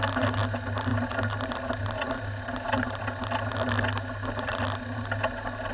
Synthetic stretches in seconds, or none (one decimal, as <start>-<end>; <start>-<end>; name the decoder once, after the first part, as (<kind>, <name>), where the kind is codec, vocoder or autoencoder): none